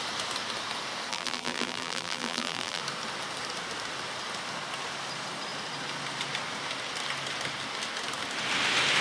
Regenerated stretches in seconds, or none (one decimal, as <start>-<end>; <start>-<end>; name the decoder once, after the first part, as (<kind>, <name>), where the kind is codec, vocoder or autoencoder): 1.1-2.8 (vocoder, BigVGAN v2)